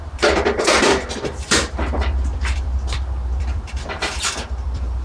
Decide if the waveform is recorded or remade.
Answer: remade